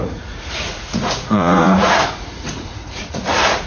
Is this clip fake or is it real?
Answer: fake